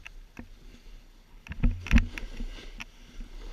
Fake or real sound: real